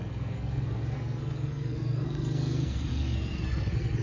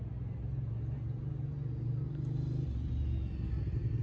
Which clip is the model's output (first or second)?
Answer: first